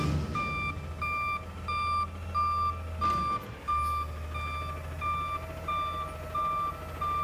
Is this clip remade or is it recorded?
recorded